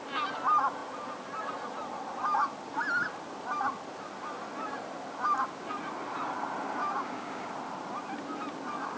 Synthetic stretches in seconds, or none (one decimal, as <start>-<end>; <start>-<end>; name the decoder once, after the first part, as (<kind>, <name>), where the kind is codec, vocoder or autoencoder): 6.8-7.5 (codec, DAC)